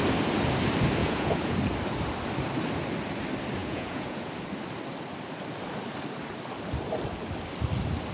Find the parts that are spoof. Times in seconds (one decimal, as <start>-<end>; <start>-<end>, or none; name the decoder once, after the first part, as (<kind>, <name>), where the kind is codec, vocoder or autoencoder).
1.0-1.5 (vocoder, Vocos); 3.6-4.3

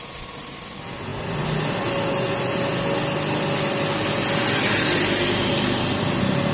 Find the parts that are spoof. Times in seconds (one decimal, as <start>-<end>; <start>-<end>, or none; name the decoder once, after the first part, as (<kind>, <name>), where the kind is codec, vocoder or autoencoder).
none

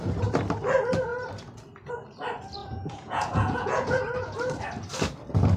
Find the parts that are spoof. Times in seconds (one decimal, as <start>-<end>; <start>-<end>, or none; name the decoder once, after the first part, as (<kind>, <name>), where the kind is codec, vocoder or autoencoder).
2.6-4.0 (vocoder, Vocos)

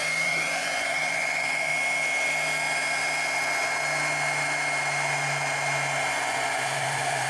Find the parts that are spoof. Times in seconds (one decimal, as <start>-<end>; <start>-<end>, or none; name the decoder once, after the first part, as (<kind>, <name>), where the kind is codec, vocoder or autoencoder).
0.0-1.7 (vocoder, Vocos); 6.1-7.3

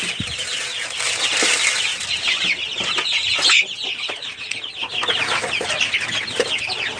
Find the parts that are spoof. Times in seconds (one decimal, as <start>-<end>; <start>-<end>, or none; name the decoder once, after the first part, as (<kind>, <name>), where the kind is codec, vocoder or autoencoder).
none